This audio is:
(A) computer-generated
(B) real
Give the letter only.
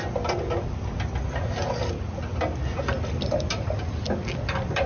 B